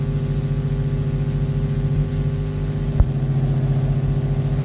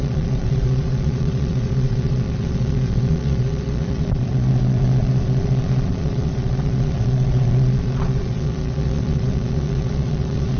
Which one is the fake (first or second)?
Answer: second